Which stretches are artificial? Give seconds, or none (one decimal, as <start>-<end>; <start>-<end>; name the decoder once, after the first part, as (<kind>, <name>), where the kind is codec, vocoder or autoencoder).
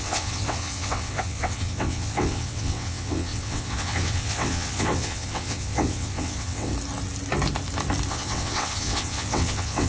0.0-6.7 (vocoder, WaveNeXt); 8.1-9.9